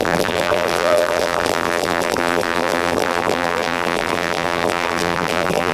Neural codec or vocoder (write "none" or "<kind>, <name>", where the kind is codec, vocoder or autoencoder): vocoder, BigVGAN v2